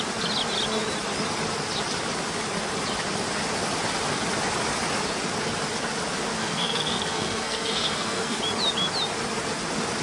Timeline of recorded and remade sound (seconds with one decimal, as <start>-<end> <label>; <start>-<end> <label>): 0.0-6.4 recorded; 6.4-8.4 remade; 8.4-10.0 recorded